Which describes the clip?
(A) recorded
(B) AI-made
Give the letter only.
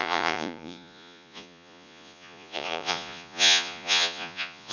B